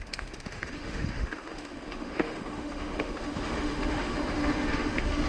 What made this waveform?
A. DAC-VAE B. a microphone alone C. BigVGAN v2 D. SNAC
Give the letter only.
A